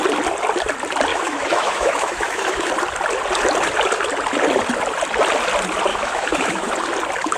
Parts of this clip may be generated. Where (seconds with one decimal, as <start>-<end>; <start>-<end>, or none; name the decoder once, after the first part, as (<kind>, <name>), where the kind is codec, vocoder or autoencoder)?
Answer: 1.1-2.7 (autoencoder, DAC-VAE); 5.9-6.7